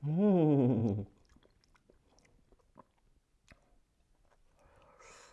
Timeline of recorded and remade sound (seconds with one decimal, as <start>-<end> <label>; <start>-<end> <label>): 0.0-5.3 recorded